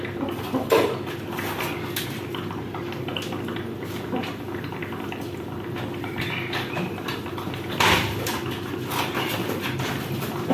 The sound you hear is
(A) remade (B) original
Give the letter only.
B